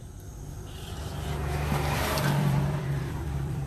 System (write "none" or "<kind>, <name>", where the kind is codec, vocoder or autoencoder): vocoder, BigVGAN v2